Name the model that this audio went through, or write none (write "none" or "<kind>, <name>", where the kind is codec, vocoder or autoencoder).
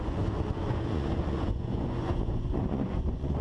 vocoder, Vocos